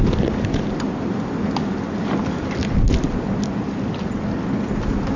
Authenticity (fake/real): real